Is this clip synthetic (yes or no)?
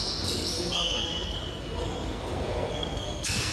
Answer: yes